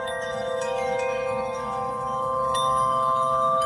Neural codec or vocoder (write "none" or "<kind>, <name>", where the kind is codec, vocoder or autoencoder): autoencoder, DAC-VAE